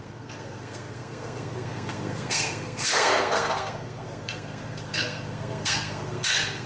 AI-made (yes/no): yes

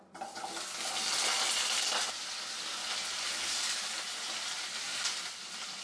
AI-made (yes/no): no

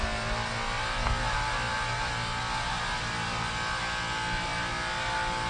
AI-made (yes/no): no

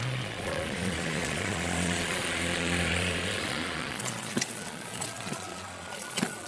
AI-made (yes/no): yes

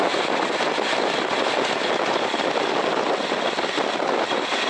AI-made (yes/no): yes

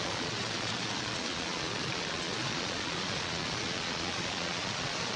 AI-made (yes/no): yes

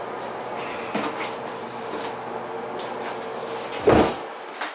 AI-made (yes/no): no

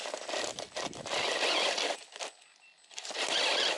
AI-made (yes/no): no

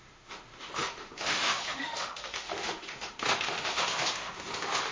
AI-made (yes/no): yes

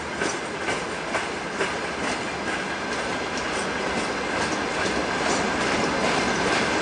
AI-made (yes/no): no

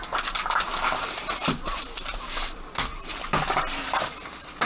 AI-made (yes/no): no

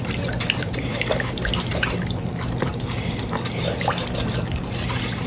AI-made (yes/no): no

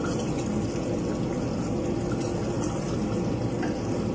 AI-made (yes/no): no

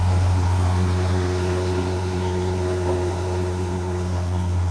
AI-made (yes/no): yes